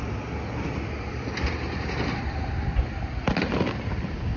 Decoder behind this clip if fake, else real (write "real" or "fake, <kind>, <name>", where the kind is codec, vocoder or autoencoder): real